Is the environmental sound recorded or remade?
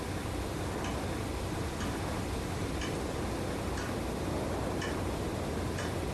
recorded